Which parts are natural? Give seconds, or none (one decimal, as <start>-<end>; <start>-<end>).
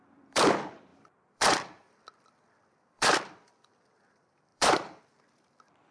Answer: none